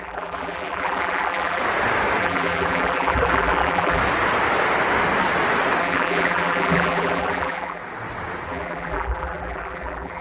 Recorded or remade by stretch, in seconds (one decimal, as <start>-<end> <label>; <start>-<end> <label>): 0.0-1.6 remade; 1.6-2.2 recorded; 2.2-4.0 remade; 4.0-5.8 recorded; 5.8-7.8 remade; 7.8-8.5 recorded; 8.5-10.2 remade